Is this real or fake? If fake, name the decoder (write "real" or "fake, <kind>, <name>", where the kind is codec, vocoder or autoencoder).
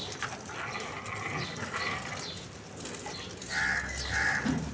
real